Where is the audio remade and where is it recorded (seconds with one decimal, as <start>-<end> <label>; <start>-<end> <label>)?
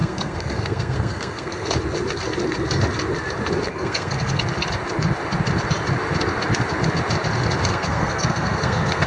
0.0-1.7 remade; 1.7-3.7 recorded; 3.7-4.4 remade; 4.4-7.7 recorded; 7.7-9.1 remade